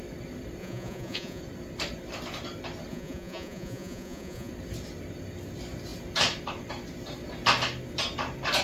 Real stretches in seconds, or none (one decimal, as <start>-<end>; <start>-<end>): 0.0-0.6; 1.4-2.9; 4.5-8.6